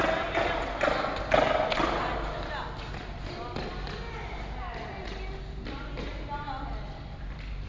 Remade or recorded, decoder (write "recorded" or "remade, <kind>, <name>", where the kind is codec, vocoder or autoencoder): recorded